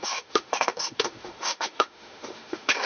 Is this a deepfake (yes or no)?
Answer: yes